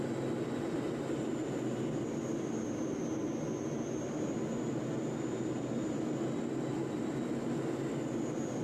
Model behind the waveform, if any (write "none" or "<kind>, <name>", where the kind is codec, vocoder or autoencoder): none